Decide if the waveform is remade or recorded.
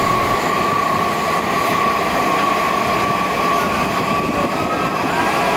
recorded